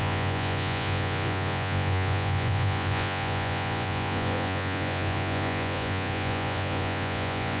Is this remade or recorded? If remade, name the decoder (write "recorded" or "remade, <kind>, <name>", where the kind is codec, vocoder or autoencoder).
remade, vocoder, Vocos